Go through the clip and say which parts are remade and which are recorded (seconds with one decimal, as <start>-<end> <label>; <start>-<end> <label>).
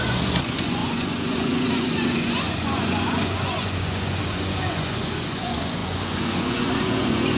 0.0-7.4 remade